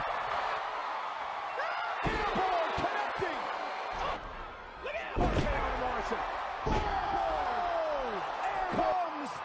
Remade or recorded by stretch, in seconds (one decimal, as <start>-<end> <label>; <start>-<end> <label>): 0.0-6.5 recorded; 6.5-7.6 remade; 7.6-9.4 recorded